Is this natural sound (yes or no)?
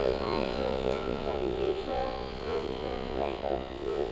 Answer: no